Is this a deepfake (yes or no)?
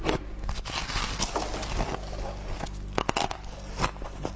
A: no